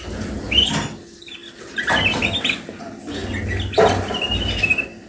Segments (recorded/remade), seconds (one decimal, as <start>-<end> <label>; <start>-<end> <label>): 0.0-5.1 recorded